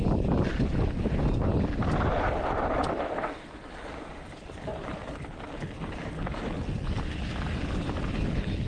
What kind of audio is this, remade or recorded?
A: recorded